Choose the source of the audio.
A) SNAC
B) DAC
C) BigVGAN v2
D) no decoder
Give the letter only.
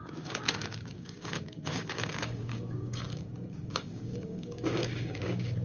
B